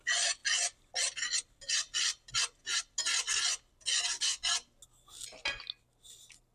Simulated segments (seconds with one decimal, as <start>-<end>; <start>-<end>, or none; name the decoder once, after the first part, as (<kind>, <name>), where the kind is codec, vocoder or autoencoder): none